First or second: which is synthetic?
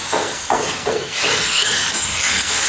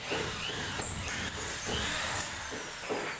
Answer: first